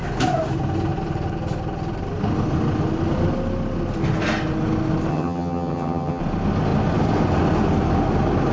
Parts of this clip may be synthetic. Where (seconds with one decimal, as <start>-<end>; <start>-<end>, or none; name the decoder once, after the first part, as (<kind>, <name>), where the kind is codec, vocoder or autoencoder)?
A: 5.1-6.2 (vocoder, HiFi-GAN)